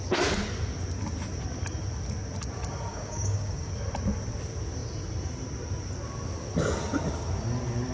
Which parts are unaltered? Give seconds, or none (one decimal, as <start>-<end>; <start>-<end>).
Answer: 0.0-2.9; 3.7-7.9